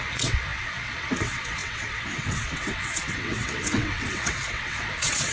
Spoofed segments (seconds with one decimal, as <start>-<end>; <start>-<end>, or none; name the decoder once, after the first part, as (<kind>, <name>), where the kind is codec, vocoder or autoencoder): 0.0-5.3 (vocoder, WaveNeXt)